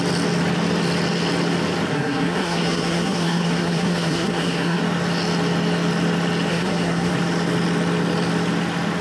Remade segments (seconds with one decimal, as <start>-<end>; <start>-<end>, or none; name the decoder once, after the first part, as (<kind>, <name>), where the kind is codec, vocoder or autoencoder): 1.9-4.8 (codec, SNAC); 6.5-7.1